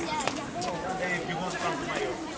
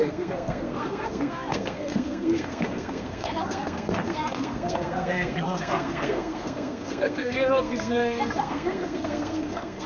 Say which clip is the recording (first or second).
first